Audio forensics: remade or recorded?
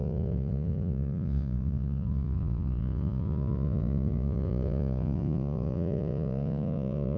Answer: remade